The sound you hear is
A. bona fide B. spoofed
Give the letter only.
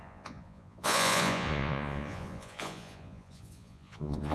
B